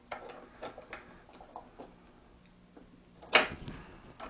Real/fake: real